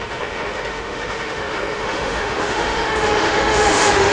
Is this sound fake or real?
fake